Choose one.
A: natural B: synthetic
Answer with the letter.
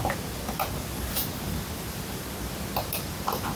A